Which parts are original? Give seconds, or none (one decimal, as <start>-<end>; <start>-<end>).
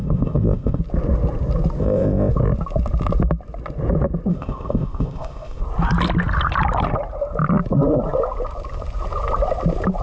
0.8-1.8; 2.3-4.3; 5.6-10.0